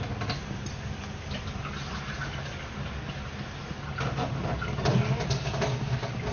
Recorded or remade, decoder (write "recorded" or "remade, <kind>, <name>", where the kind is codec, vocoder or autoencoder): recorded